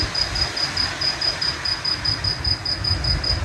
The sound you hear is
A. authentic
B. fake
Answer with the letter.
A